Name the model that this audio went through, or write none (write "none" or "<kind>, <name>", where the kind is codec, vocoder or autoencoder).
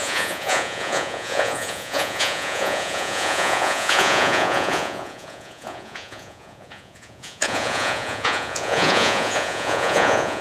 vocoder, Vocos